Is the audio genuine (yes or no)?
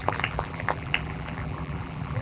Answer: no